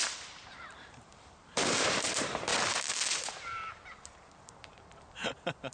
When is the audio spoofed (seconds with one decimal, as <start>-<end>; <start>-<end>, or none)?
0.0-2.5; 4.2-5.7